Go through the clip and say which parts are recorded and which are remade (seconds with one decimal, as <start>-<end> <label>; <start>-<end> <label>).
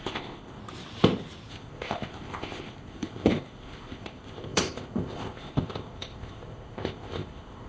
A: 0.0-0.6 remade; 0.6-1.5 recorded; 1.5-7.7 remade